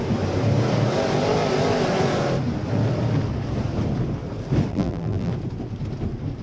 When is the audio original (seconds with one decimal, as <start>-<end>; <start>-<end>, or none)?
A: 0.0-4.7; 5.3-6.4